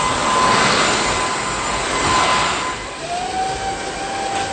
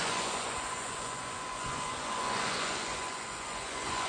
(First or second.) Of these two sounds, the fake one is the second